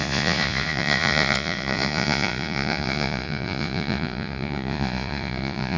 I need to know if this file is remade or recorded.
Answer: remade